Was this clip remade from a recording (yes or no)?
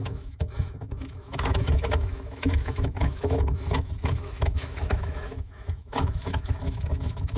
yes